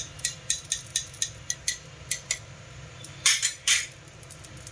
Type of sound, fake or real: real